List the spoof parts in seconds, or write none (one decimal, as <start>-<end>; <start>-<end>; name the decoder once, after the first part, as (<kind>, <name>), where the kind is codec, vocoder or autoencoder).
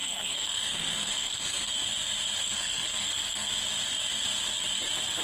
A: 0.0-1.7 (codec, SNAC); 2.4-3.5